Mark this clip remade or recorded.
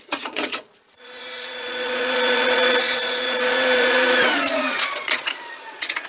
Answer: remade